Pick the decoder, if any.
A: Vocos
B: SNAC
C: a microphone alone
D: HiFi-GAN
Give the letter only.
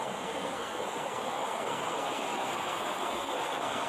B